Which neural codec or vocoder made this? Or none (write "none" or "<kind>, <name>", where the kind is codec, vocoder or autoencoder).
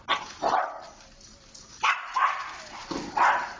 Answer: none